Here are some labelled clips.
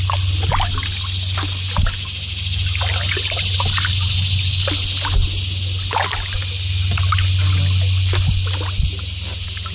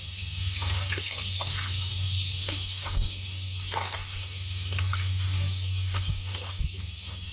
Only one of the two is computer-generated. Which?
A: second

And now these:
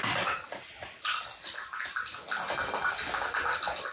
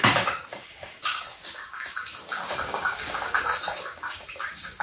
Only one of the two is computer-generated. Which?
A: second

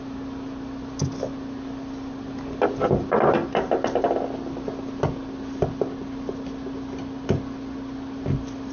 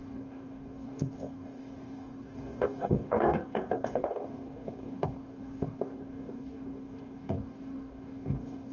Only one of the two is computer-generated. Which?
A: second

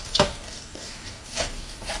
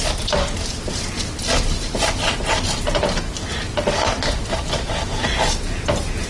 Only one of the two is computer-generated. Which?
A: first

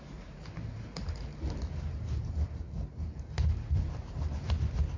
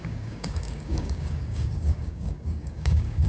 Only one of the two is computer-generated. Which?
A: second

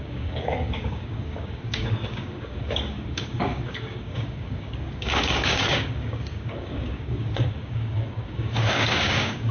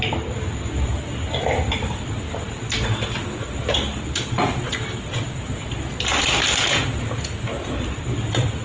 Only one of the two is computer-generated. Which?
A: first